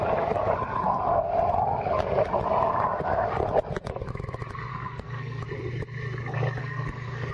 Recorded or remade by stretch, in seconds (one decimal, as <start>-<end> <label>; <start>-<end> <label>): 0.0-4.7 recorded; 4.7-5.4 remade; 5.4-6.6 recorded; 6.6-7.3 remade